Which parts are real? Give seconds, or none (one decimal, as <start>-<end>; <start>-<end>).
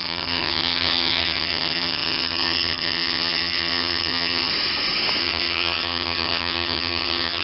4.5-5.2